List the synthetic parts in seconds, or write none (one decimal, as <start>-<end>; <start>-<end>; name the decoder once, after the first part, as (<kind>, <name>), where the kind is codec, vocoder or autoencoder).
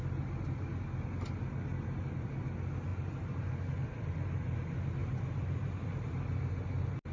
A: 2.9-4.1 (vocoder, BigVGAN v2); 5.0-6.4